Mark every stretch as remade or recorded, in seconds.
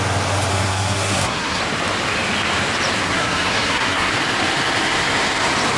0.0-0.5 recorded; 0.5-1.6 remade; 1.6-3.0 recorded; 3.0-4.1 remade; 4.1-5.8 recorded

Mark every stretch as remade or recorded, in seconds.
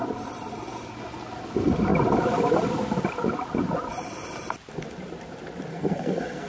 0.0-5.7 recorded; 5.7-6.5 remade